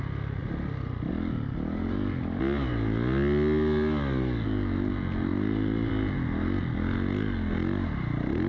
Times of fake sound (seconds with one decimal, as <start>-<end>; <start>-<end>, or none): none